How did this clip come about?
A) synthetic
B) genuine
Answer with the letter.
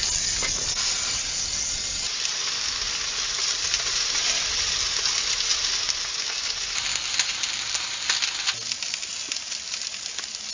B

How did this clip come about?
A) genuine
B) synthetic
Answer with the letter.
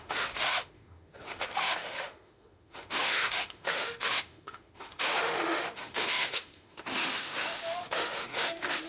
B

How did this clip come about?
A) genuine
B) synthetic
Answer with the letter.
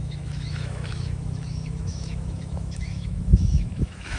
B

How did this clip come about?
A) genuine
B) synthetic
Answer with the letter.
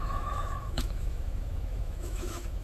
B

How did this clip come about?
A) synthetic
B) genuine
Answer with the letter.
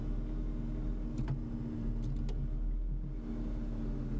B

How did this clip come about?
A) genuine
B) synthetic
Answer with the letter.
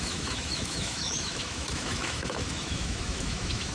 B